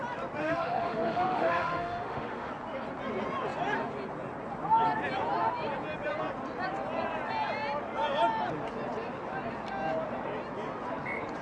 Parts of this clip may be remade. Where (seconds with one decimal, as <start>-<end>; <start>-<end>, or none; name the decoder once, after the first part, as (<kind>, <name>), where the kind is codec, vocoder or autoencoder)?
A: 0.4-2.5 (autoencoder, DAC-VAE)